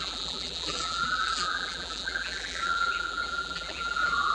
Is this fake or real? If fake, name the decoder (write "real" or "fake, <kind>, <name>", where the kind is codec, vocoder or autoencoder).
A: fake, vocoder, BigVGAN v2